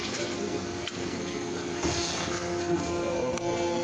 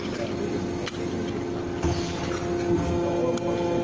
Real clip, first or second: second